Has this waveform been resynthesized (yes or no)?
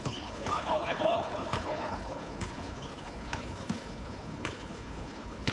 yes